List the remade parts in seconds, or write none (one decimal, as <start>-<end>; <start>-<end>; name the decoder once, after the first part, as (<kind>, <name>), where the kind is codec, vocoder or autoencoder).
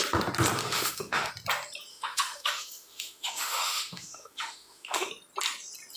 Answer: 0.6-1.3 (autoencoder, DAC-VAE); 1.9-5.1